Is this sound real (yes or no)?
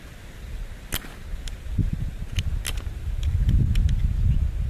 yes